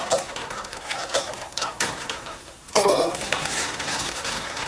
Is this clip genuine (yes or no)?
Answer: no